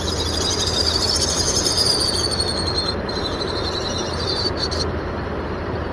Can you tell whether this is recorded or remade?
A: remade